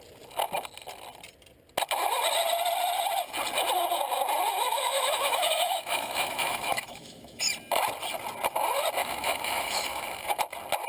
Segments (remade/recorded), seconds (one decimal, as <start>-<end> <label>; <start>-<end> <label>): 0.0-4.5 recorded; 4.5-7.4 remade; 7.4-9.0 recorded; 9.0-10.4 remade; 10.4-10.9 recorded